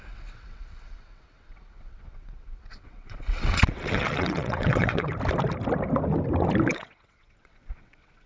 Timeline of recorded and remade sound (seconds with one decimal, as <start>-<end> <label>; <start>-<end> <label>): 0.0-5.1 remade; 5.1-6.7 recorded; 6.7-8.3 remade